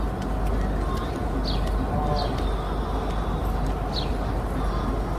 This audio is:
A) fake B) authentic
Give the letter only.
B